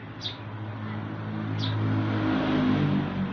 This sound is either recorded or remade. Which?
recorded